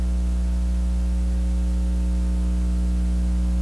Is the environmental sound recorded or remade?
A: recorded